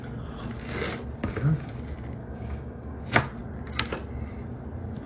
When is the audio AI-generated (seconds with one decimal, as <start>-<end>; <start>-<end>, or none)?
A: 1.2-1.7; 2.2-3.0